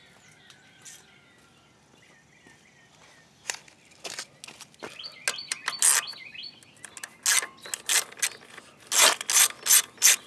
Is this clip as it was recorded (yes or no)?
yes